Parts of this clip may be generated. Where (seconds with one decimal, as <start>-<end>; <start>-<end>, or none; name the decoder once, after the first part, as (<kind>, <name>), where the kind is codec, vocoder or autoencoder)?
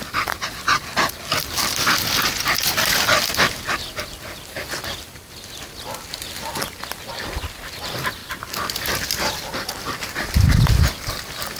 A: none